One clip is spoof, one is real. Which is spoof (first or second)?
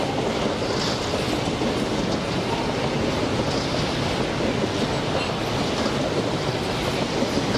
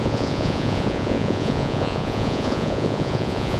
second